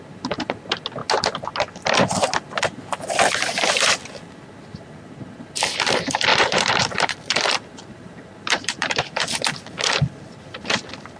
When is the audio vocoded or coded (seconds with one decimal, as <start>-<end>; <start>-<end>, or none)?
6.3-9.9